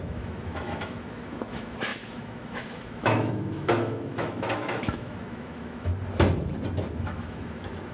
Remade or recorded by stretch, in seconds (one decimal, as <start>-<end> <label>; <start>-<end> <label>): 0.0-5.9 remade; 5.9-7.0 recorded; 7.0-7.9 remade

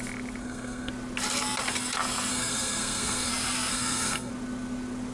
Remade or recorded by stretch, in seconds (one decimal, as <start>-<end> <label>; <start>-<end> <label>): 0.0-0.4 recorded; 0.4-0.9 remade; 0.9-2.3 recorded; 2.3-3.3 remade; 3.3-3.7 recorded; 3.7-4.3 remade; 4.3-5.1 recorded

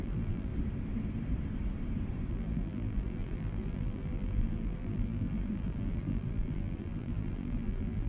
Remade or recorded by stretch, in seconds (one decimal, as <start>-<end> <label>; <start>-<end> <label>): 0.0-0.5 remade; 0.5-2.3 recorded; 2.3-8.1 remade

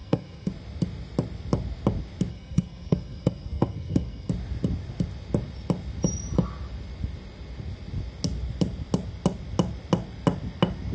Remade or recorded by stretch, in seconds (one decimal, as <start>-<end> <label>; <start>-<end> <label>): 0.0-0.5 remade; 0.5-2.3 recorded; 2.3-4.3 remade; 4.3-10.9 recorded

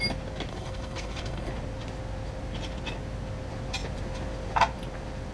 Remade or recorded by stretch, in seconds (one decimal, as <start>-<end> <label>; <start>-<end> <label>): 0.0-0.5 recorded; 0.5-1.5 remade; 1.5-5.3 recorded

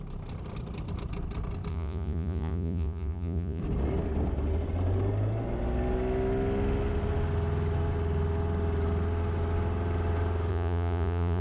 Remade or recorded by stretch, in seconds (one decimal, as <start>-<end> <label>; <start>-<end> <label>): 0.0-1.7 recorded; 1.7-3.6 remade; 3.6-10.5 recorded; 10.5-11.4 remade

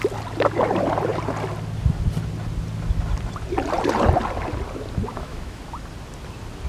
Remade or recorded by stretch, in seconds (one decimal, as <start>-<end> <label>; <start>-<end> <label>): 0.0-5.1 recorded; 5.1-5.6 remade; 5.6-6.7 recorded

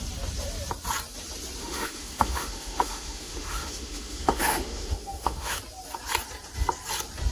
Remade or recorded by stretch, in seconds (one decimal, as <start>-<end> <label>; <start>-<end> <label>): 0.0-1.6 recorded; 1.6-5.6 remade; 5.6-7.3 recorded